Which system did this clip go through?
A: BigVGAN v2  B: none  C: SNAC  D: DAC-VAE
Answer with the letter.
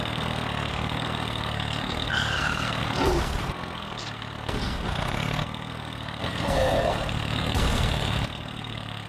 C